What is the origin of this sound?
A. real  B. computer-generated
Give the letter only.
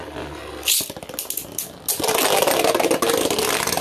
A